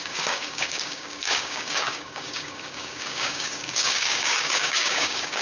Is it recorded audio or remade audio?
remade